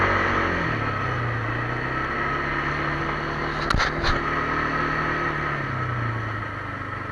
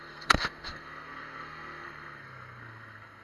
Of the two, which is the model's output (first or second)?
second